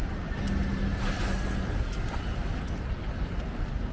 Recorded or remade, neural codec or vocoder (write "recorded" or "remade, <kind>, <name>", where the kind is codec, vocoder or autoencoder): recorded